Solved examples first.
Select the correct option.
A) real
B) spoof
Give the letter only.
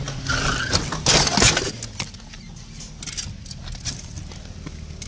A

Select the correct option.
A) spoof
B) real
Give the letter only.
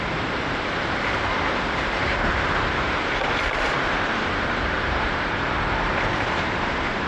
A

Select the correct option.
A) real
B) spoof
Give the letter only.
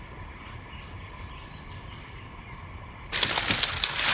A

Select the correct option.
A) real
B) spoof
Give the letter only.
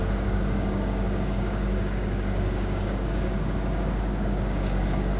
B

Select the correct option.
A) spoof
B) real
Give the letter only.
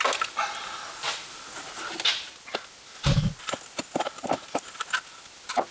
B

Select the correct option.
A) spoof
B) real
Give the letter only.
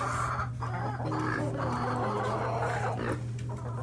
B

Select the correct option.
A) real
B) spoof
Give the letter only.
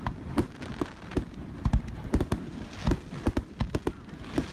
A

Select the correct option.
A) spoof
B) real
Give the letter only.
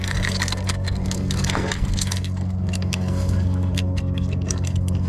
A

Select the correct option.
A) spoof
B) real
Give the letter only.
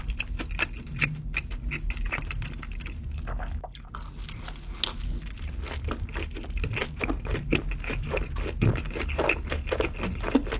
B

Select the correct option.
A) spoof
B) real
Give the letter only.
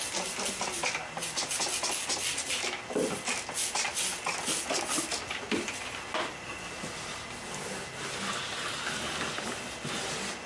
B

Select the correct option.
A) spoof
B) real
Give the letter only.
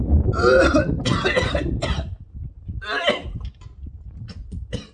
B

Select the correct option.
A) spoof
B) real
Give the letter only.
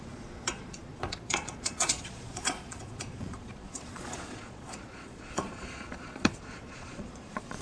A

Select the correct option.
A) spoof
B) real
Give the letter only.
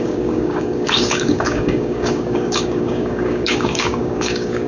A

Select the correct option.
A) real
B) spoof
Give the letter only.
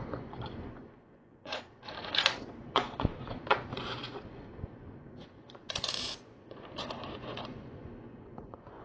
B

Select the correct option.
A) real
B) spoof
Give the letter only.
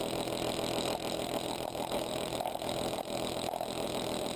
B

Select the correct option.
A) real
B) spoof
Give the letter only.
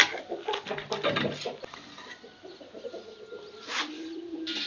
A